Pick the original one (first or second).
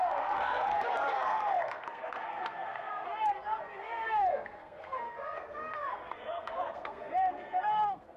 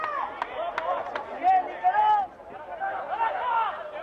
second